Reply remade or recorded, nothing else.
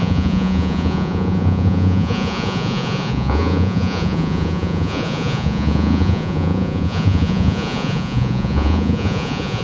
remade